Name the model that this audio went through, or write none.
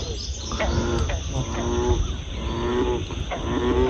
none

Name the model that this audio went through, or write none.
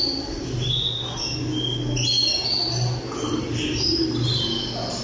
none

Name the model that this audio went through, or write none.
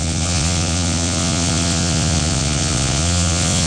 vocoder, Vocos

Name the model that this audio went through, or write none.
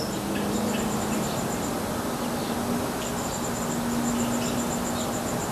none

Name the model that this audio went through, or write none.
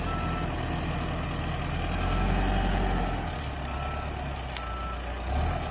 none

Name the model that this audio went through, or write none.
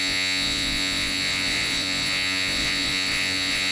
vocoder, Vocos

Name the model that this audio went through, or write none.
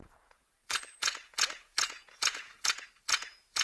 vocoder, Vocos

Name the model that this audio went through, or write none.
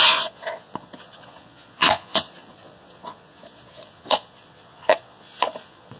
vocoder, Vocos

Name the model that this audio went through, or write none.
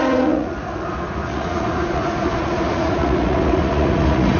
vocoder, Vocos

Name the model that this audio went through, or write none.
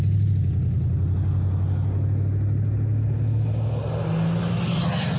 none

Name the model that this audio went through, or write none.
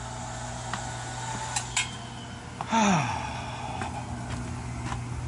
none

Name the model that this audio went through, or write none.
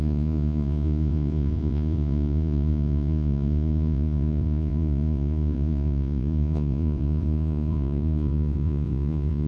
vocoder, Vocos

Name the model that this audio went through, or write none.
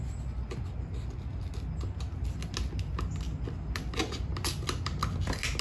none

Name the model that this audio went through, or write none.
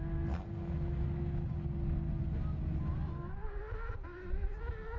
none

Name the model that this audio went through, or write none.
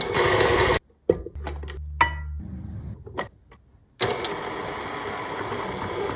none